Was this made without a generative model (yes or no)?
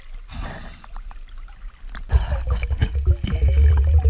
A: yes